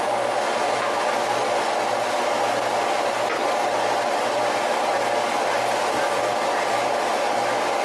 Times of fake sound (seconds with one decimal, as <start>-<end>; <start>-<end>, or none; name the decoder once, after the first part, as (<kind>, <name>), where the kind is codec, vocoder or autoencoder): none